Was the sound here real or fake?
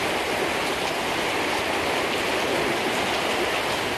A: real